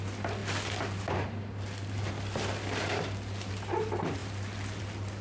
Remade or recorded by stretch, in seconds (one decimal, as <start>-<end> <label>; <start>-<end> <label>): 0.0-0.4 recorded; 0.4-3.5 remade; 3.5-4.2 recorded; 4.2-4.8 remade; 4.8-5.2 recorded